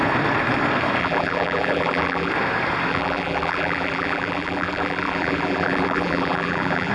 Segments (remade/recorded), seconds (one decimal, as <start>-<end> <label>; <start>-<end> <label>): 0.0-1.0 recorded; 1.0-2.3 remade; 2.3-2.9 recorded; 2.9-6.9 remade